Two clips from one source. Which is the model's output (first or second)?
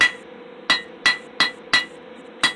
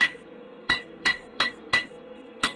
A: second